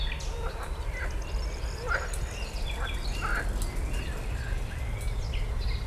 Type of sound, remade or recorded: recorded